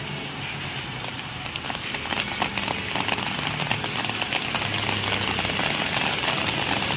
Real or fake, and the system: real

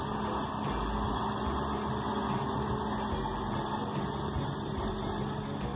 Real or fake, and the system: real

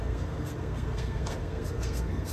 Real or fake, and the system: fake, codec, SNAC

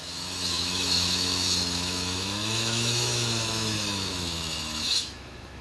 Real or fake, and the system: fake, autoencoder, DAC-VAE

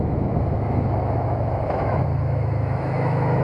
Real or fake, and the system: fake, autoencoder, DAC-VAE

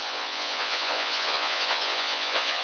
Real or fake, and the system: fake, vocoder, Vocos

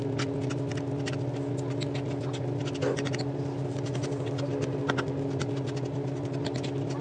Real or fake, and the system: real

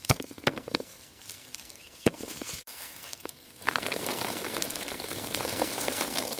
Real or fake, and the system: fake, codec, SNAC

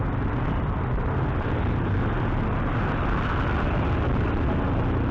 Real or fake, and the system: real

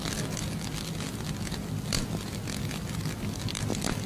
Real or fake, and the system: real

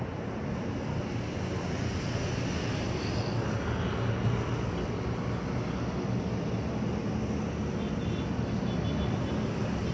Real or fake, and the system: real